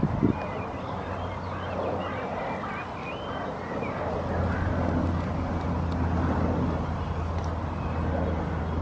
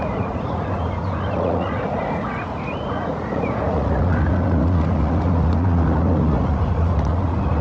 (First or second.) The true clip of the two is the first